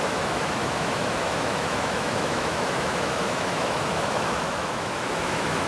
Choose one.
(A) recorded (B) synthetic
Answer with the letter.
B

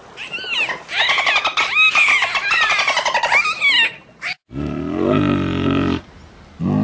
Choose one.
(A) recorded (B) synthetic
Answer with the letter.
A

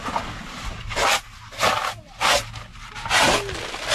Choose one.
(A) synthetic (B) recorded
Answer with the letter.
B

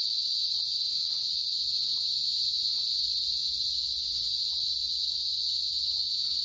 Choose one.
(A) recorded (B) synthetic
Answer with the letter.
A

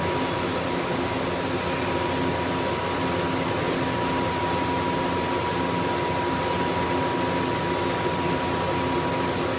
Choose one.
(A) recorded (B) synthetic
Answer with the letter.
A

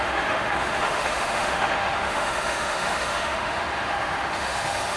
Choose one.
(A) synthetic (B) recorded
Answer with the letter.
A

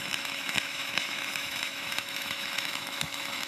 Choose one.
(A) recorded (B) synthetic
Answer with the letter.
B